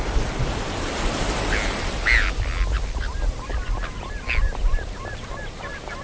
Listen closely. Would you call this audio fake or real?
real